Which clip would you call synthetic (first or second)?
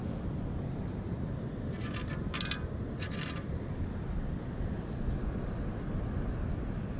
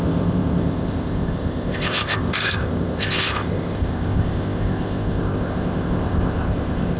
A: second